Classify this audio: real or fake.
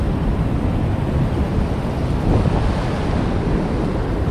real